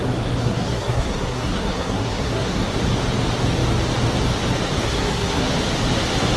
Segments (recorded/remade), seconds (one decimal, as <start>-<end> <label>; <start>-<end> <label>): 0.0-0.4 recorded; 0.4-2.7 remade; 2.7-4.8 recorded; 4.8-5.5 remade; 5.5-6.4 recorded

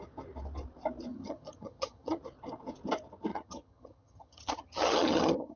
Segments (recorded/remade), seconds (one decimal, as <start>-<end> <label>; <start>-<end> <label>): 0.0-1.1 recorded; 1.1-2.2 remade; 2.2-3.3 recorded; 3.3-5.6 remade

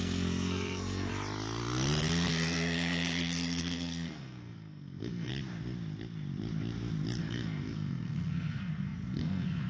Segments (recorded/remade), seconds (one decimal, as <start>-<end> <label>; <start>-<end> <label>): 0.0-1.1 remade; 1.1-2.3 recorded; 2.3-5.3 remade; 5.3-7.2 recorded; 7.2-9.7 remade

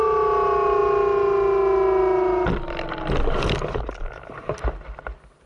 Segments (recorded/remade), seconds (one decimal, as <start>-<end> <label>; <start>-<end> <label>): 0.0-5.5 recorded

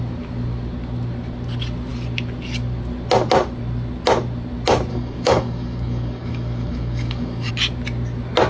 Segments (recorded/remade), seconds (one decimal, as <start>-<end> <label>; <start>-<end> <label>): 0.0-4.9 recorded; 4.9-7.5 remade; 7.5-8.5 recorded

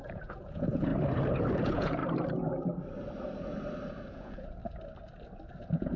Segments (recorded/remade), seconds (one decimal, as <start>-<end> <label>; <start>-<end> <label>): 0.0-0.9 remade; 0.9-1.5 recorded; 1.5-2.0 remade; 2.0-4.1 recorded; 4.1-4.6 remade; 4.6-5.6 recorded; 5.6-6.0 remade

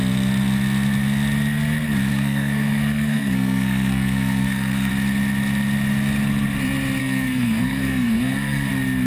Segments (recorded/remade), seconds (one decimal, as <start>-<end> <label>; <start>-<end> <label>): 0.0-2.1 recorded; 2.1-4.9 remade; 4.9-7.0 recorded; 7.0-8.7 remade; 8.7-9.1 recorded